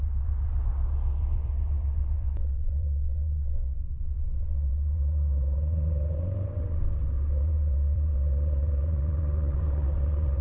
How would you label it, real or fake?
fake